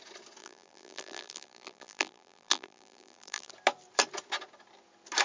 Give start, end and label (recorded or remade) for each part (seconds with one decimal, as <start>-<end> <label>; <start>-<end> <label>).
0.0-0.4 recorded; 0.4-3.5 remade; 3.5-5.2 recorded